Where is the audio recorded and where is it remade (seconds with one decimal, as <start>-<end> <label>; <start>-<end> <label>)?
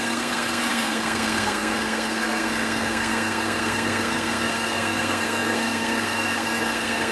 0.0-7.1 remade